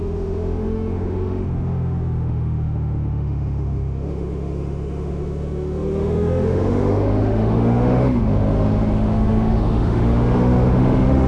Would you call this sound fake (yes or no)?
yes